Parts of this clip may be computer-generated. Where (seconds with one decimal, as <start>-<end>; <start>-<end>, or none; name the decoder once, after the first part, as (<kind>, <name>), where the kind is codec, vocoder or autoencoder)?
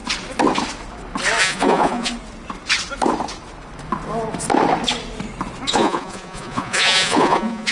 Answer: 1.4-2.1 (vocoder, Vocos); 5.7-7.7